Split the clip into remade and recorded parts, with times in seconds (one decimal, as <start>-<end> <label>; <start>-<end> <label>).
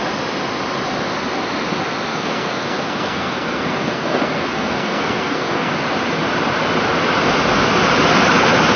0.0-2.1 recorded; 2.1-5.7 remade; 5.7-8.8 recorded